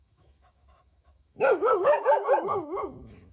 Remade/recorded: remade